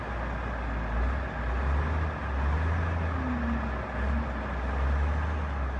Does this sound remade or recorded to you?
recorded